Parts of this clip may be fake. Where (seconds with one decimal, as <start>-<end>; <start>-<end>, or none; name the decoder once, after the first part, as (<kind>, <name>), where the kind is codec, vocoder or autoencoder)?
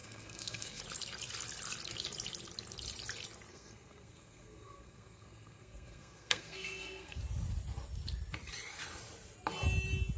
0.0-0.8 (codec, SNAC); 3.5-7.2